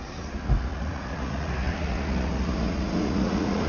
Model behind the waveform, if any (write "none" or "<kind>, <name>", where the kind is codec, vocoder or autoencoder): vocoder, Vocos